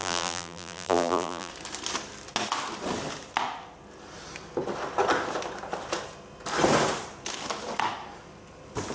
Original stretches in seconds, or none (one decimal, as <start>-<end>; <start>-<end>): 1.5-8.9